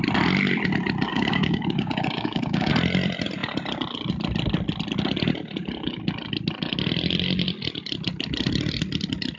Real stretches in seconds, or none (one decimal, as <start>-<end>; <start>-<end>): 0.0-1.1; 2.7-9.4